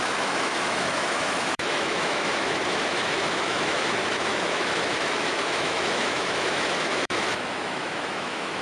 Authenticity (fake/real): fake